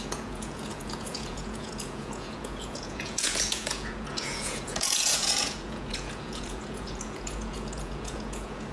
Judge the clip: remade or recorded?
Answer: remade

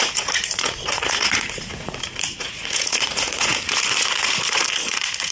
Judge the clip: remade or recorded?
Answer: remade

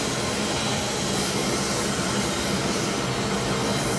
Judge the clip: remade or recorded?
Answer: recorded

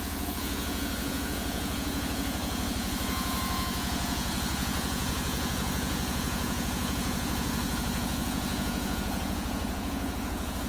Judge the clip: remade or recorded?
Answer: remade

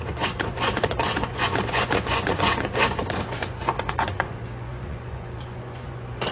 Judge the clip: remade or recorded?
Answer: remade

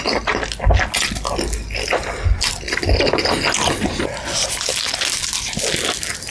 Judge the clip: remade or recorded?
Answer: recorded